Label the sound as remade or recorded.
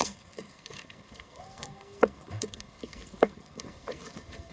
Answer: remade